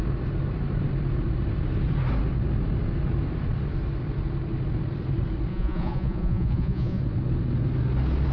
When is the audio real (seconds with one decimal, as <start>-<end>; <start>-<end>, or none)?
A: 0.0-5.5; 7.0-8.3